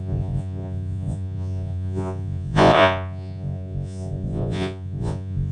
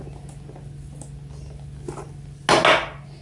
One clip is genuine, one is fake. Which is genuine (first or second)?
second